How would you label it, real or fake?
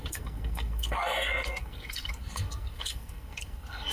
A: fake